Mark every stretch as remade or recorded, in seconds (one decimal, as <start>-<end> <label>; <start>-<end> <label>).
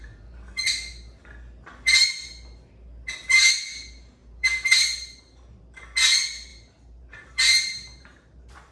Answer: 0.0-4.2 recorded; 4.2-5.7 remade; 5.7-6.5 recorded; 6.5-8.7 remade